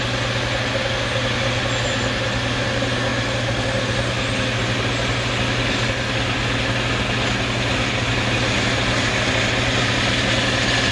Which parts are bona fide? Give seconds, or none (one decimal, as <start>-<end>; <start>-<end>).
0.0-10.9